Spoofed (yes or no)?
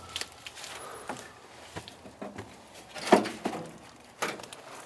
no